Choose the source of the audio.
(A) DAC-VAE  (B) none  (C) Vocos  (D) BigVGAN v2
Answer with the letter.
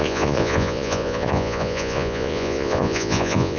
C